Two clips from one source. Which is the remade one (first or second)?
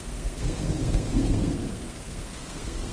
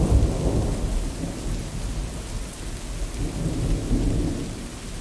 first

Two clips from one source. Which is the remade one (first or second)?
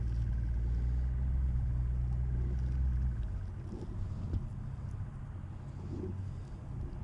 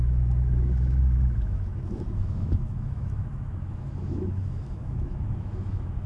second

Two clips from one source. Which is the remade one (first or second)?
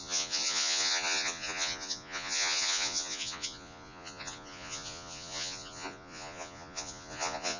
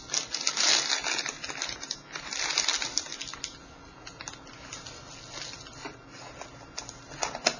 first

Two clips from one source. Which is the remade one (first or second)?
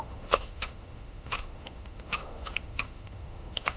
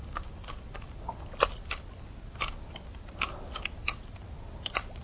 first